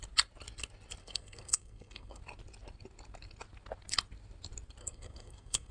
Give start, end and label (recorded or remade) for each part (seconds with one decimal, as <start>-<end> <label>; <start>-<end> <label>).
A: 0.0-1.0 recorded; 1.0-2.2 remade; 2.2-4.8 recorded; 4.8-5.7 remade